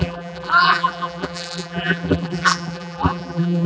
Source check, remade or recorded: remade